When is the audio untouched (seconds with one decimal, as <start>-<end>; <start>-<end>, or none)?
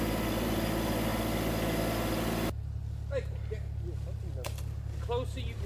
0.0-5.7